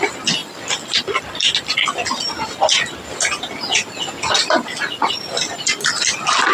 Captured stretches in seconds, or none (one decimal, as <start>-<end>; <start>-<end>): 0.0-6.5